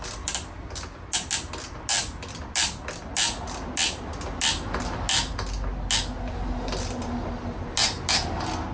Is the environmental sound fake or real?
real